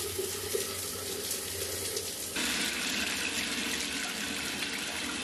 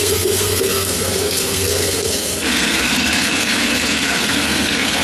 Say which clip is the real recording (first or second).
first